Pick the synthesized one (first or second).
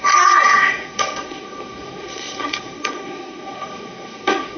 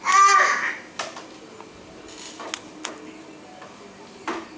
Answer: first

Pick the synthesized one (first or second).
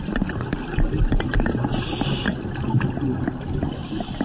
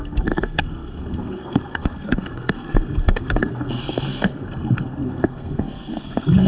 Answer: second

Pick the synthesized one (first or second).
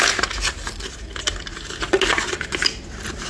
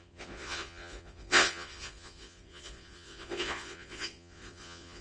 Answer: second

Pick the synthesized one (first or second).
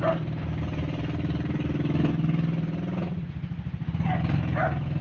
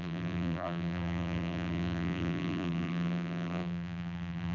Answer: second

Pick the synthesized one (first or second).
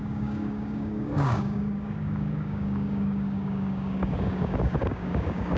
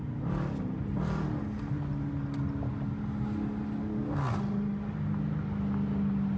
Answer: first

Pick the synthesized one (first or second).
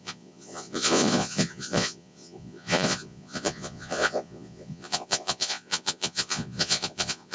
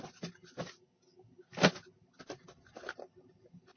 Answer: first